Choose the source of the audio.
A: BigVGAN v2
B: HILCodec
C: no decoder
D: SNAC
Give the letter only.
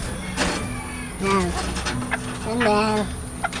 C